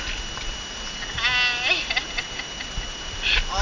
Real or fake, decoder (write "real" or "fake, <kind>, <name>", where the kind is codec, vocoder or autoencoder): real